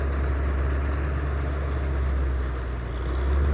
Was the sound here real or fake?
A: real